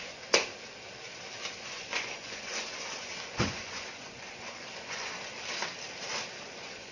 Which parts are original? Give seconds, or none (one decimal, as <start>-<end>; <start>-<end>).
0.5-1.6; 5.1-6.5